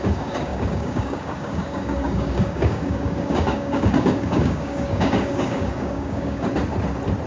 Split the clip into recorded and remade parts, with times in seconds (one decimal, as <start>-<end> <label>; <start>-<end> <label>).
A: 0.0-6.5 remade; 6.5-7.3 recorded